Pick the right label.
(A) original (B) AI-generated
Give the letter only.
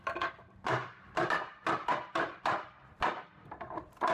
B